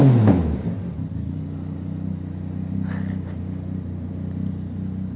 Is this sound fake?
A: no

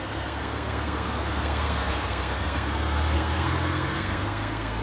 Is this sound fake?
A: yes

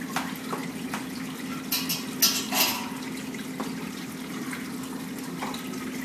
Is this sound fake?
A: no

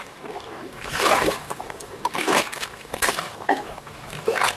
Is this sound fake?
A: yes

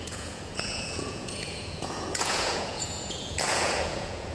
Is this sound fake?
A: yes